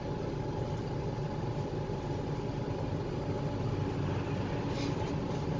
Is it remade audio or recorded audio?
recorded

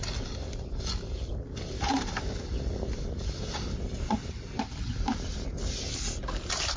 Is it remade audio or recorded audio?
recorded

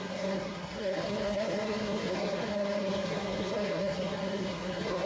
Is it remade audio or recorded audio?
remade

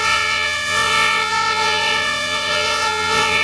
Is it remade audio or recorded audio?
remade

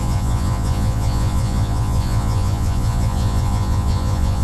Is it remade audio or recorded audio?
remade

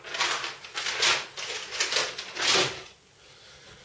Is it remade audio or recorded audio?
recorded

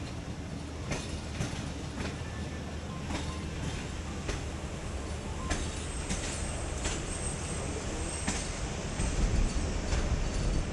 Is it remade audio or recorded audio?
recorded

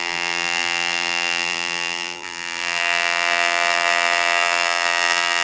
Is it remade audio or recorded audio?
remade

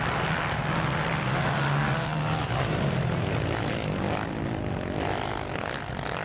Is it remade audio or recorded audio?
recorded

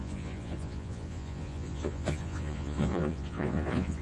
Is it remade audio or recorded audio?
remade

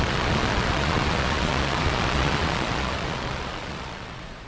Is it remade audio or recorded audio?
remade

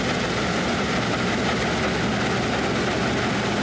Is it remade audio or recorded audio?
recorded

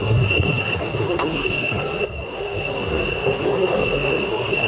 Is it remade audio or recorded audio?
remade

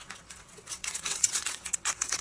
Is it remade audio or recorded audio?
remade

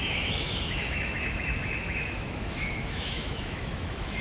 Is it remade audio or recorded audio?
remade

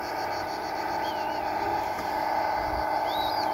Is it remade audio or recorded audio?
recorded